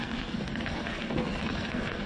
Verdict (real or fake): fake